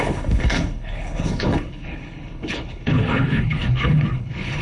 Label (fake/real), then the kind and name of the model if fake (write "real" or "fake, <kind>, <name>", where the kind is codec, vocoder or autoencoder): fake, codec, HILCodec